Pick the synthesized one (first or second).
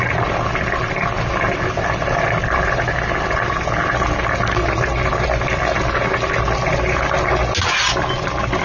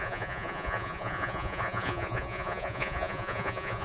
second